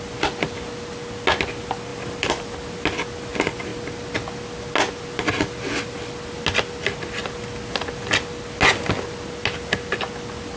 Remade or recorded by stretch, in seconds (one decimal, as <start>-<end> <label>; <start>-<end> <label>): 0.0-1.9 recorded; 1.9-2.8 remade; 2.8-10.6 recorded